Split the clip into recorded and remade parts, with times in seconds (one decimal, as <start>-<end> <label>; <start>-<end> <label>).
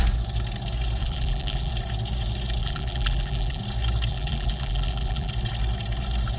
0.0-1.0 recorded; 1.0-1.7 remade; 1.7-2.6 recorded; 2.6-3.6 remade; 3.6-4.1 recorded; 4.1-5.3 remade; 5.3-6.4 recorded